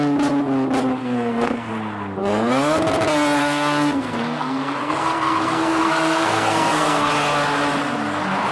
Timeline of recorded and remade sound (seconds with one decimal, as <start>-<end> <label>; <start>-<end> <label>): 0.0-1.0 recorded; 1.0-1.7 remade; 1.7-2.2 recorded; 2.2-2.8 remade; 2.8-3.4 recorded; 3.4-7.1 remade; 7.1-8.5 recorded